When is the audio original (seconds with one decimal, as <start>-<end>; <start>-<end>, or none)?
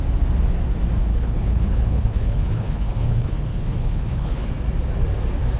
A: 0.0-1.1; 4.5-5.6